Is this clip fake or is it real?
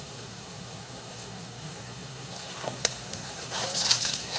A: fake